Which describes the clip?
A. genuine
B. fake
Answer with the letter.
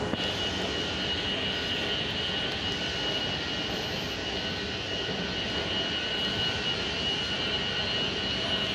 A